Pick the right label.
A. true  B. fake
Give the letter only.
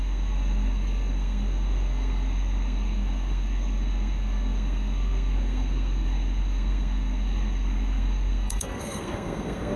B